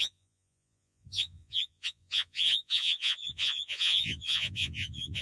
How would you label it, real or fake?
fake